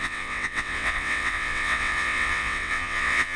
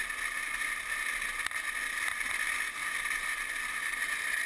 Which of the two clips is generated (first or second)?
first